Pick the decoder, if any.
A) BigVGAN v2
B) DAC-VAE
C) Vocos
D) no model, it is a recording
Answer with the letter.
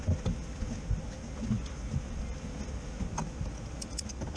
D